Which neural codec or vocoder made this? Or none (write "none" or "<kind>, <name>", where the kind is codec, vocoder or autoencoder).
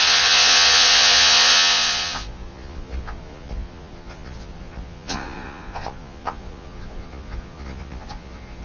vocoder, Vocos